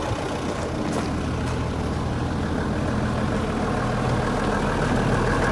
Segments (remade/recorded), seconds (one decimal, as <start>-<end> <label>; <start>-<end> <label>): 0.0-5.5 recorded